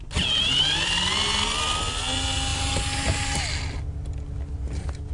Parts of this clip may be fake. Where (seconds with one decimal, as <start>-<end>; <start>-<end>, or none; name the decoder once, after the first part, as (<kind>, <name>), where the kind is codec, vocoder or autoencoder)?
none